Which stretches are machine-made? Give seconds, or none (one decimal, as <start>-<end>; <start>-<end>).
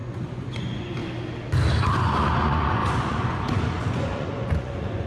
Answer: 0.0-1.0; 1.9-5.1